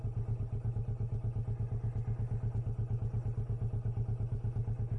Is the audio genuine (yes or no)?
yes